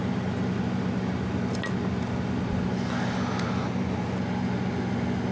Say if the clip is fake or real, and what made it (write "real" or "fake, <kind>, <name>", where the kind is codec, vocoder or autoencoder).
real